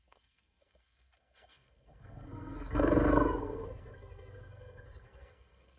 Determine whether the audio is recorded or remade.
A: remade